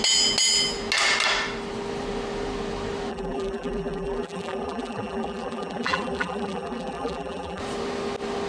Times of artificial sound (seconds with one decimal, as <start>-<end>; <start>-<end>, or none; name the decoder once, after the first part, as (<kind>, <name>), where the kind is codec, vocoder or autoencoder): 3.1-7.6 (vocoder, BigVGAN v2)